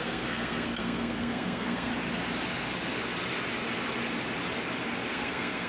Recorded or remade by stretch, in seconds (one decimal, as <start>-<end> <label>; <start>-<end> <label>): 0.0-1.9 remade; 1.9-5.1 recorded; 5.1-5.7 remade